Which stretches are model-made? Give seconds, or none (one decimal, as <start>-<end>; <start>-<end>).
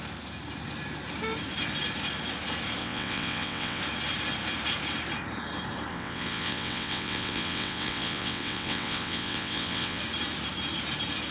2.8-3.8; 5.9-10.0